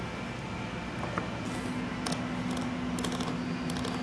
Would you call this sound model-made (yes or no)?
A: no